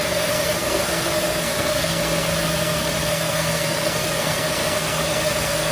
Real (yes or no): no